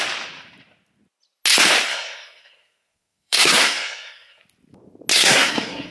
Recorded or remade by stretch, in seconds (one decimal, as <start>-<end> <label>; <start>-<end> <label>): 0.0-1.9 recorded; 1.9-4.4 remade; 4.4-5.1 recorded; 5.1-5.9 remade